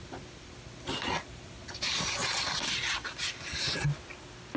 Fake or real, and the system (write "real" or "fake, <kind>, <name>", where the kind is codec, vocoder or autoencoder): real